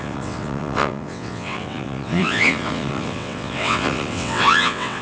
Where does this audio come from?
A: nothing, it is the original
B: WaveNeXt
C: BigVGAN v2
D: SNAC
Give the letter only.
B